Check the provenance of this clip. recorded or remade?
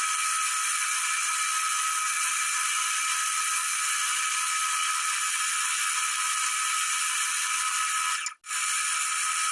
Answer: recorded